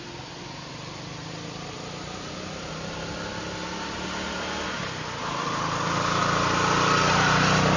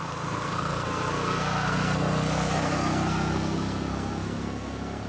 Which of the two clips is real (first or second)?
first